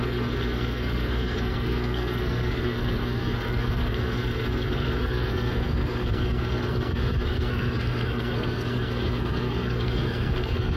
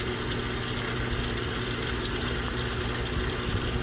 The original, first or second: second